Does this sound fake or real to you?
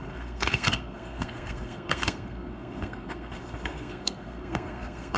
fake